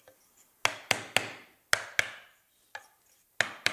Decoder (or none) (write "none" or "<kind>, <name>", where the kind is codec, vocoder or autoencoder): none